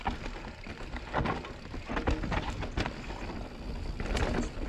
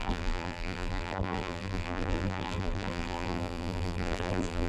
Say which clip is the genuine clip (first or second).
first